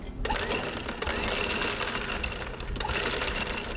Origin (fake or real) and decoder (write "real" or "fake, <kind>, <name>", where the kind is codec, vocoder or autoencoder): real